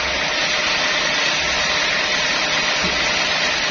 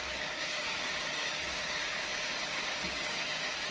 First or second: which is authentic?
first